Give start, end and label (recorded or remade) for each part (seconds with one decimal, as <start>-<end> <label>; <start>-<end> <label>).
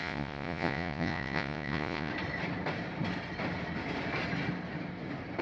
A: 0.0-2.1 remade; 2.1-5.4 recorded